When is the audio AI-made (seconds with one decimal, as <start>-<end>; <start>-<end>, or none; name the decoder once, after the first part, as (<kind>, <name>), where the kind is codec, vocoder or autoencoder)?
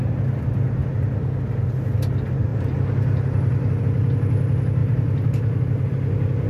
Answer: 4.8-5.9 (vocoder, BigVGAN v2)